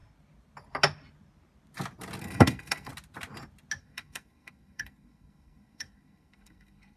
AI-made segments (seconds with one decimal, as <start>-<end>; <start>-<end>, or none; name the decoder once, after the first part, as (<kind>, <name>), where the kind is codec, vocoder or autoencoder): 2.2-2.9 (codec, SNAC); 3.8-7.0